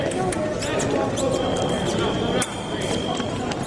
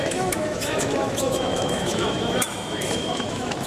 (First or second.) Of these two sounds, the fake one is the second